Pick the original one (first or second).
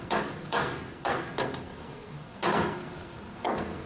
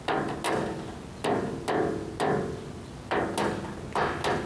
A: second